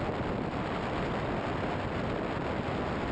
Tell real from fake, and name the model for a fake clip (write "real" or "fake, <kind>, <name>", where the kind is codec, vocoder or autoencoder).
real